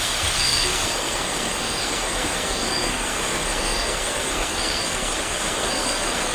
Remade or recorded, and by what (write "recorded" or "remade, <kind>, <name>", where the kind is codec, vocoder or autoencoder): remade, codec, SNAC